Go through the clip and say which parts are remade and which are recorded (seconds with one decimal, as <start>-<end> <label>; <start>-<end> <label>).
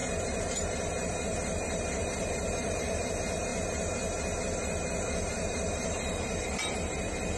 0.0-3.5 remade; 3.5-4.4 recorded; 4.4-7.4 remade